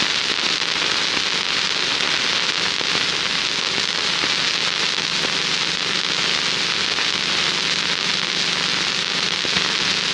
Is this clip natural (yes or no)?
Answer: yes